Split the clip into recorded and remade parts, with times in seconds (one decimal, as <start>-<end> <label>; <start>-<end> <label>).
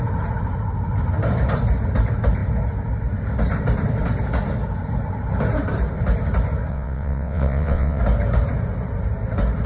0.0-6.7 recorded; 6.7-8.0 remade; 8.0-9.7 recorded